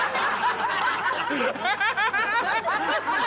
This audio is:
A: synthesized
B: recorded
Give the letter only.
B